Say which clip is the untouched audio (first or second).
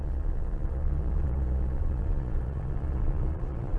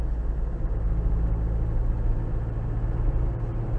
second